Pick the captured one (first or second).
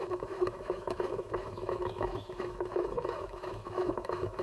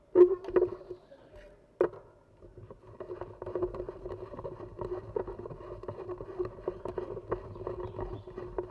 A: second